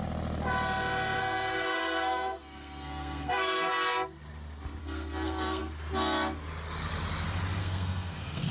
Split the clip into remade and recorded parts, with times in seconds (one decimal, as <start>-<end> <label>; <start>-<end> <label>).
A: 0.0-1.2 recorded; 1.2-3.7 remade; 3.7-4.8 recorded; 4.8-5.6 remade; 5.6-7.6 recorded; 7.6-8.5 remade